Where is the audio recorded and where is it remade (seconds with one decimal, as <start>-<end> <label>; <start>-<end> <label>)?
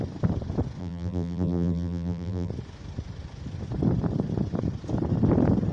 0.0-0.8 recorded; 0.8-2.5 remade; 2.5-5.7 recorded